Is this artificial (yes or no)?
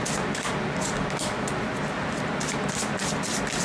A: no